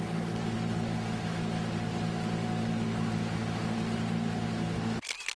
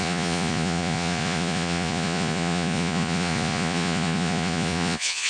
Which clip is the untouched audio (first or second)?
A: first